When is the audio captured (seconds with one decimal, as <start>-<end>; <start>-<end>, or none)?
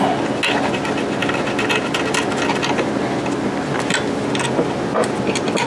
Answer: 0.0-5.7